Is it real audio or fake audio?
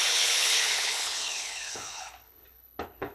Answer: fake